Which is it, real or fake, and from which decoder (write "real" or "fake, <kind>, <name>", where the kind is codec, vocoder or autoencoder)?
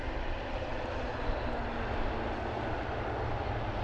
real